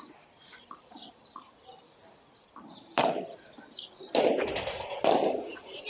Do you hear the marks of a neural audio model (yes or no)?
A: no